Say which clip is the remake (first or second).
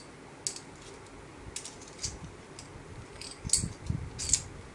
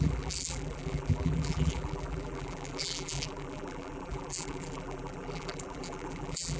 second